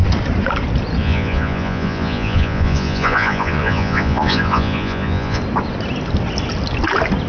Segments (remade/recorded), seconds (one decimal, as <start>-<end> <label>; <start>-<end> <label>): 0.0-1.0 recorded; 1.0-5.4 remade; 5.4-7.3 recorded